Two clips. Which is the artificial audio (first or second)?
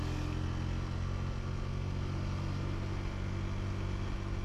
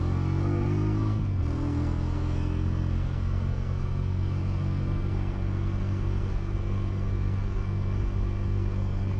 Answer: second